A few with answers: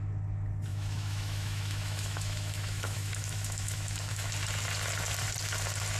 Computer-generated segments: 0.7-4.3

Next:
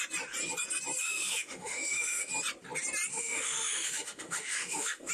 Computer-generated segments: 1.0-2.3; 3.1-5.1

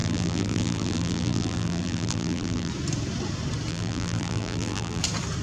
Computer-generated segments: 0.0-2.7; 3.7-5.0